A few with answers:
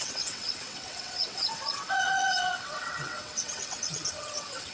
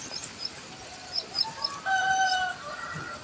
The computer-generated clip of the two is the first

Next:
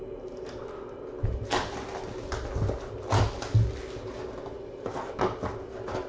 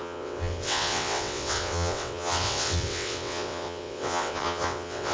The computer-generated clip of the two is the second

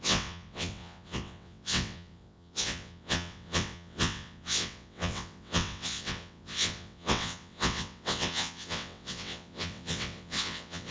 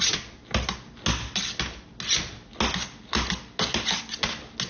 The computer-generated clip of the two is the first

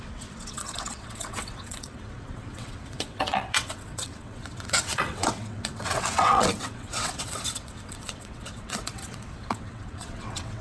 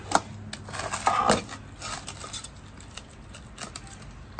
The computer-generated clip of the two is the first